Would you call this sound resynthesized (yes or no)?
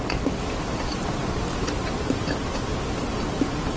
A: no